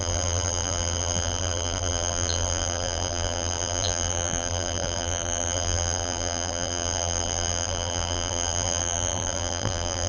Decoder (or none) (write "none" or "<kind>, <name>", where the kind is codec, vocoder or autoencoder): vocoder, BigVGAN v2